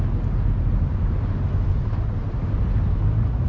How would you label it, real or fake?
real